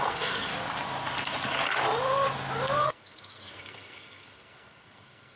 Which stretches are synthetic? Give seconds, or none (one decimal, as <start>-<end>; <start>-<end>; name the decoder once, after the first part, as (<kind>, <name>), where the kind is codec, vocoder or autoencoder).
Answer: 0.0-0.5 (codec, SNAC); 2.8-5.4